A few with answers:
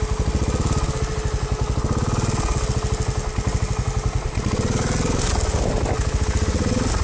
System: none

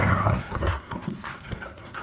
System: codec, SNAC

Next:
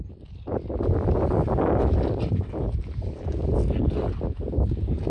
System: none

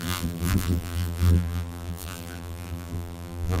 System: vocoder, BigVGAN v2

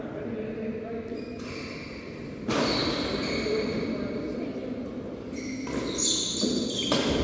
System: none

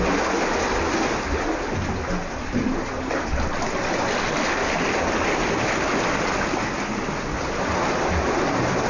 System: none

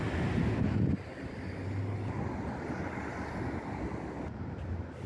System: none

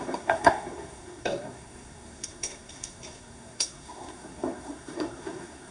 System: codec, SNAC